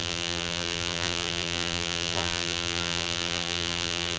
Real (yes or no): no